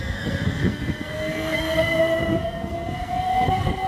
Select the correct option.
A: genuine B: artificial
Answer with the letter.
B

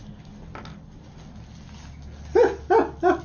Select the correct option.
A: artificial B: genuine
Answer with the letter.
B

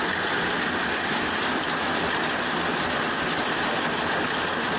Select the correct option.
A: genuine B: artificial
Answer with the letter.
A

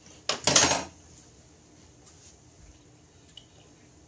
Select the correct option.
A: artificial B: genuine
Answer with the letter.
B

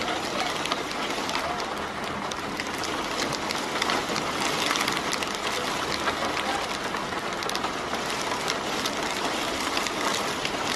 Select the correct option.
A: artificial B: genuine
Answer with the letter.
B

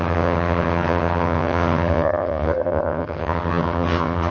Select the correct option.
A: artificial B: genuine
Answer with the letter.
A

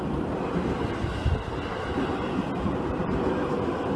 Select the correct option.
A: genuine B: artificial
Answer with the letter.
A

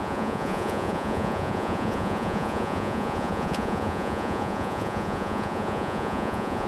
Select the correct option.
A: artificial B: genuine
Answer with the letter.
A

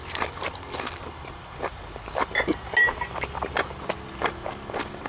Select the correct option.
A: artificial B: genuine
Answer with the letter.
B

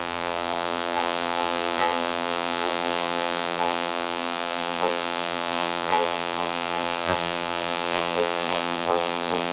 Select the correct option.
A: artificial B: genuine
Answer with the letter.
A